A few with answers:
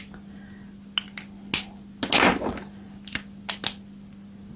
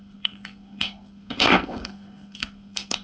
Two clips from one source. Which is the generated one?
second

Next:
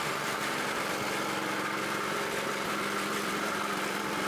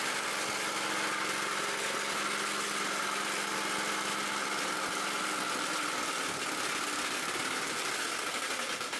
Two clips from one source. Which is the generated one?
first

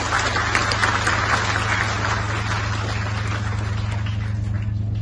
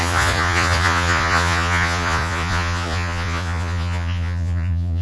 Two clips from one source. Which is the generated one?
second